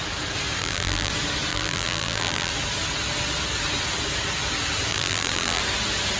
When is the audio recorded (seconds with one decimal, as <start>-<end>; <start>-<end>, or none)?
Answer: 0.0-0.6; 1.1-1.5; 2.5-4.9; 5.6-6.2